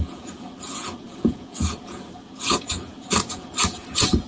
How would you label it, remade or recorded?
remade